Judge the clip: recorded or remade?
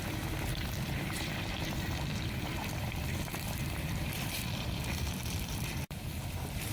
remade